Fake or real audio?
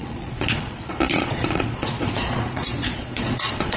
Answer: fake